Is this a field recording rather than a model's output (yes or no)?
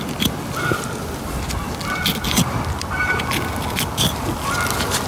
yes